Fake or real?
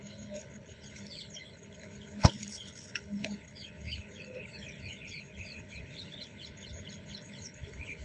fake